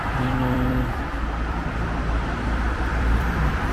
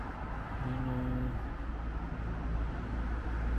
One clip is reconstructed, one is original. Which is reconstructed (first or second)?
first